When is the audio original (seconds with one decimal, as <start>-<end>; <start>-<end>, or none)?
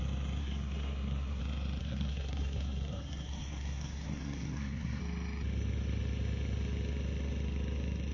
0.0-0.4; 1.4-1.8; 5.0-8.1